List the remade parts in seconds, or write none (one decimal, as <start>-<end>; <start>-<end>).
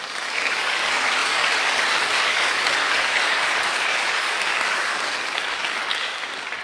0.0-6.6